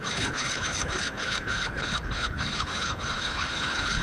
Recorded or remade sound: remade